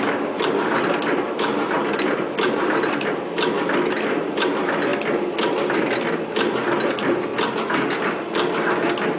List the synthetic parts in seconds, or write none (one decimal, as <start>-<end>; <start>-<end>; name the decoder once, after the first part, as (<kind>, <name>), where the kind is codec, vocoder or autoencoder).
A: none